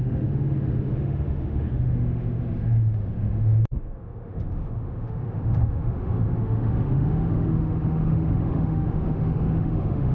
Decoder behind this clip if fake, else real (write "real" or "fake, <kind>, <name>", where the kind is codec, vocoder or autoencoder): fake, autoencoder, DAC-VAE